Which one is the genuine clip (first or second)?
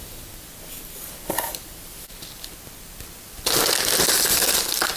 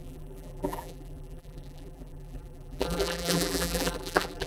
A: first